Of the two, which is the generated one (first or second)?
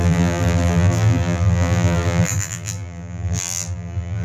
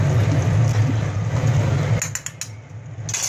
first